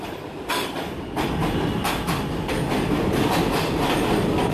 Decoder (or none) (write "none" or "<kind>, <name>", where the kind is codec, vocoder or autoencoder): none